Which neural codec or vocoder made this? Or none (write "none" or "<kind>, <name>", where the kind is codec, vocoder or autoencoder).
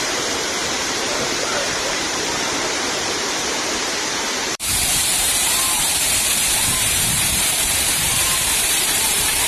vocoder, BigVGAN v2